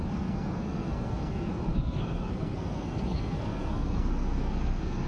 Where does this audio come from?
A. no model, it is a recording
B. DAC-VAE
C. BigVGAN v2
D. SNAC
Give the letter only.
D